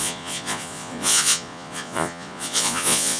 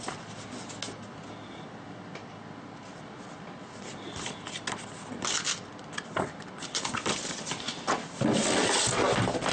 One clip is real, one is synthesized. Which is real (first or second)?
second